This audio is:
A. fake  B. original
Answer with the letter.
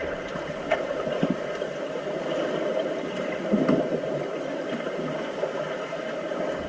B